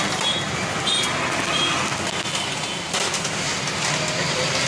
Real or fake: real